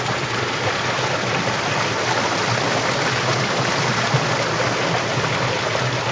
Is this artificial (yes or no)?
no